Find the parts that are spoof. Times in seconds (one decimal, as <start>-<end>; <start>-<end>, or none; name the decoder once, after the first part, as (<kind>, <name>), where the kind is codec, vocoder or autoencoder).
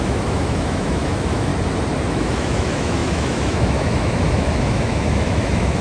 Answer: 0.0-1.5 (autoencoder, DAC-VAE); 2.1-5.8